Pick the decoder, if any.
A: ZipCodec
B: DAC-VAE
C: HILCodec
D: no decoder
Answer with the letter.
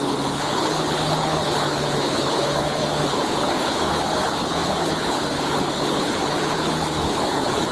C